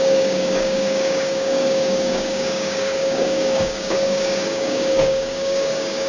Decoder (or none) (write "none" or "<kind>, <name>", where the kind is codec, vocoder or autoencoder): codec, DAC